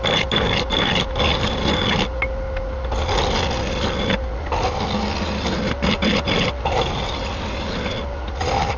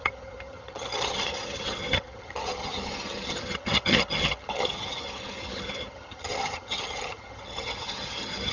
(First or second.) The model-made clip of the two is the second